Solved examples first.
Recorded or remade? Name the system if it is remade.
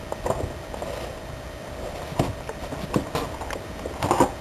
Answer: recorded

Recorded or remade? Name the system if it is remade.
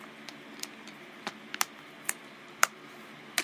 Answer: recorded